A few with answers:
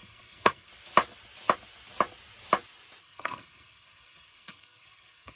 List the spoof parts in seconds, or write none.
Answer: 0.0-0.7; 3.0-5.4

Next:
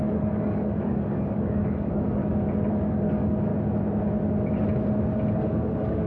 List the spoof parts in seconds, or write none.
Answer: 0.0-2.2; 2.7-3.5; 5.3-6.1

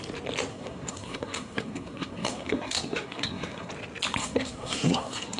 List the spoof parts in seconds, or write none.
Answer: 0.5-3.7; 4.2-5.4

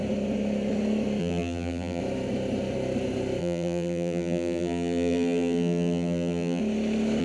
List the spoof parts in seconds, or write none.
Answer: 1.2-2.0; 3.4-6.6

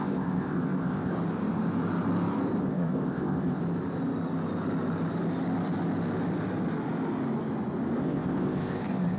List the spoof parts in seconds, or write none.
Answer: 0.0-1.1; 2.6-3.6; 8.0-9.2

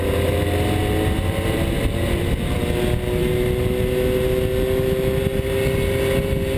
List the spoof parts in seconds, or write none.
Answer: 0.8-2.6

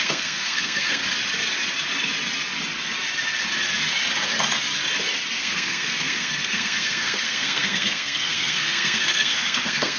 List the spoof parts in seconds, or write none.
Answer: 0.0-1.0; 5.4-10.0

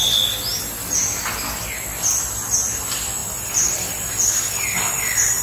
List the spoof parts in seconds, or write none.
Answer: 0.5-1.2